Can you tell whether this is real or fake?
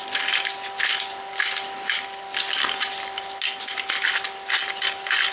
real